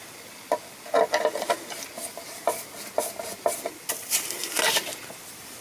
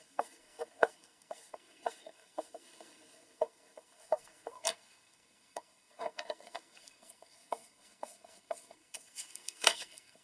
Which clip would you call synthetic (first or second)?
second